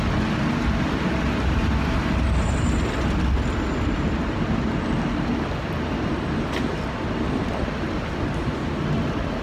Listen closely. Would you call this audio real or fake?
real